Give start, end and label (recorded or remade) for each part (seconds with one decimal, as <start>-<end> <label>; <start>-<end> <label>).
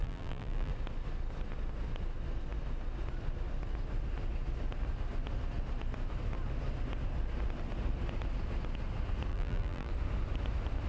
0.0-0.7 remade; 0.7-9.3 recorded; 9.3-9.9 remade; 9.9-10.9 recorded